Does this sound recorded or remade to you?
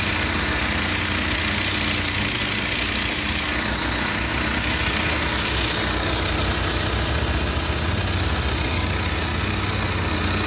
recorded